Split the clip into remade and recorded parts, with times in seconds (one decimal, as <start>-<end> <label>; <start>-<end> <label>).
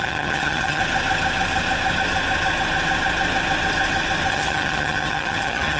0.0-0.8 remade; 0.8-4.3 recorded; 4.3-5.8 remade